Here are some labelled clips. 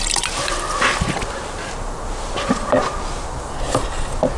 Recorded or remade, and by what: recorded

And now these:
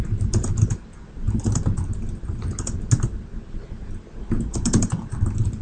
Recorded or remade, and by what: recorded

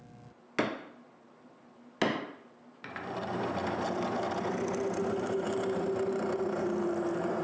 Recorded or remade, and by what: recorded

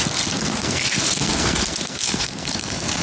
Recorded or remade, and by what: remade, codec, SNAC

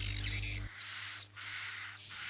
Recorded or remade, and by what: recorded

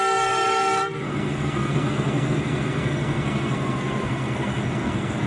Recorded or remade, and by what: remade, codec, SNAC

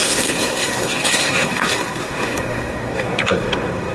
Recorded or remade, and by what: remade, codec, SNAC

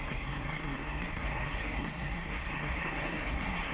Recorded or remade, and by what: remade, codec, SNAC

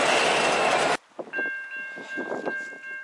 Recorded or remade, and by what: recorded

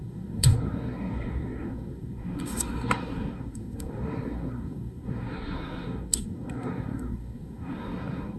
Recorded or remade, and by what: remade, codec, SNAC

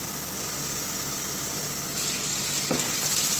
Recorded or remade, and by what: recorded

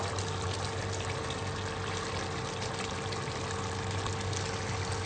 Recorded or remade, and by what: recorded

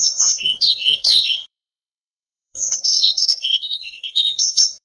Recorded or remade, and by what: remade, codec, SNAC